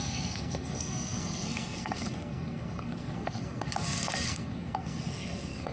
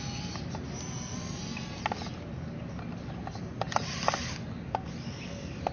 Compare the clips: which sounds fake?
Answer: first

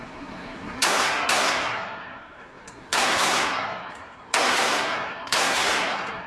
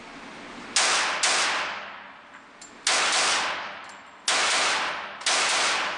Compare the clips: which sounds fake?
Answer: first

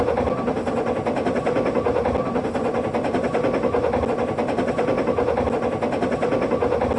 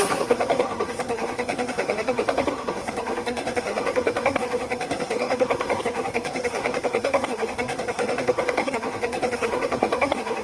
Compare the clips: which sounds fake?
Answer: second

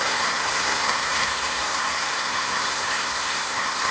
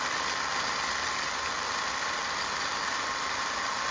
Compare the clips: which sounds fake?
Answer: first